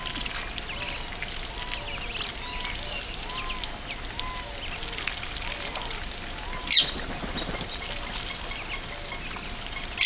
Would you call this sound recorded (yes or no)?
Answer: yes